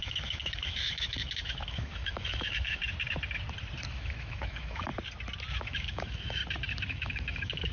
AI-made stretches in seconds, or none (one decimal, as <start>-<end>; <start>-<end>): 0.0-2.8; 3.9-4.9; 5.5-6.4; 6.9-7.7